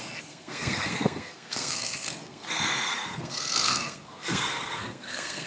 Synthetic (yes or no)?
yes